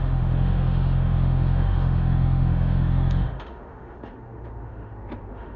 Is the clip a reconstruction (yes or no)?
yes